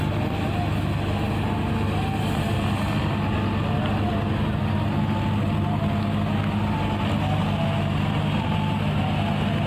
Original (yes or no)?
yes